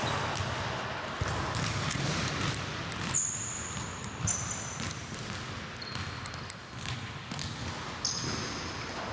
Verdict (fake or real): real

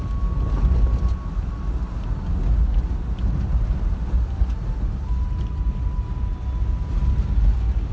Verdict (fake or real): real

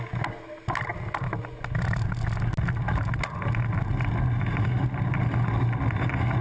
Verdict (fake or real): real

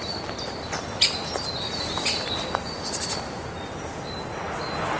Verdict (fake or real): real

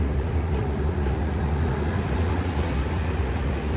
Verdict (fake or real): fake